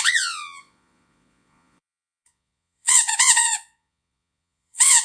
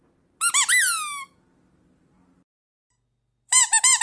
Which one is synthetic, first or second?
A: first